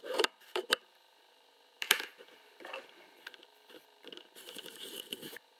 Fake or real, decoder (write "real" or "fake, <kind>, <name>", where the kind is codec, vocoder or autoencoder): fake, vocoder, BigVGAN v2